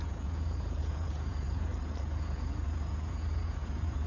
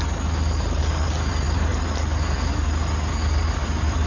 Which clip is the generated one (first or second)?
first